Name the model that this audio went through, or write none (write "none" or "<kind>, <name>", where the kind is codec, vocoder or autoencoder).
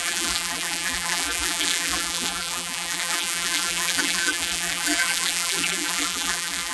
vocoder, BigVGAN v2